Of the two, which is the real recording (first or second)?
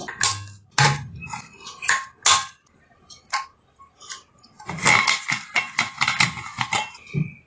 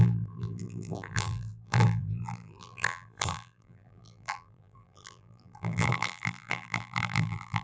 first